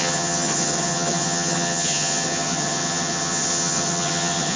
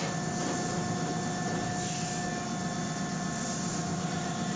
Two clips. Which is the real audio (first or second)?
second